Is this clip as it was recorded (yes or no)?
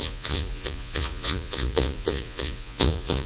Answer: no